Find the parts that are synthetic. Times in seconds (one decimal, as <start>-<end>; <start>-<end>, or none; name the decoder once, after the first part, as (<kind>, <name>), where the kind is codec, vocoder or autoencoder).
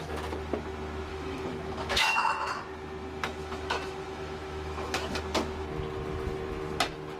1.1-2.6 (autoencoder, DAC-VAE); 3.4-5.2